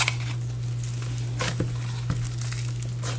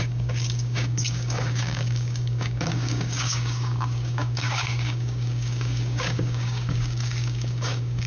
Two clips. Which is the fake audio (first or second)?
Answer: second